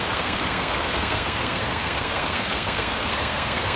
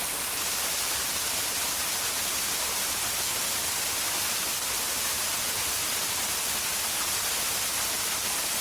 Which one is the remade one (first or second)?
first